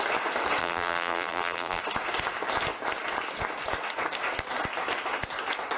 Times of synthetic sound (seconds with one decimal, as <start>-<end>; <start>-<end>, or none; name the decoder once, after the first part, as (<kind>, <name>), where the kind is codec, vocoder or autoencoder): 0.6-1.8 (vocoder, BigVGAN v2)